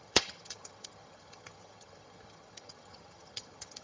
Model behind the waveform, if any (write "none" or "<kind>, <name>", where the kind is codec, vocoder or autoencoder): vocoder, HiFi-GAN